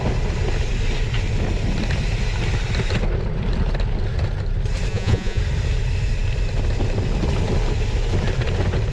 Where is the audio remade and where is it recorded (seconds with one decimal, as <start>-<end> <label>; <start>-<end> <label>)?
0.0-4.9 recorded; 4.9-5.4 remade; 5.4-8.9 recorded